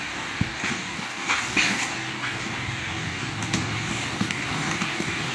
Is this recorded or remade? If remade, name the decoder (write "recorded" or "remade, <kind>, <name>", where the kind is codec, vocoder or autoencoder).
remade, codec, DAC